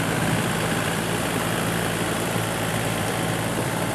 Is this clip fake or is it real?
fake